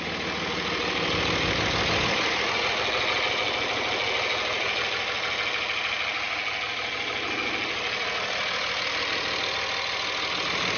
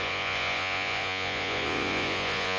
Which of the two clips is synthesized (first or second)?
second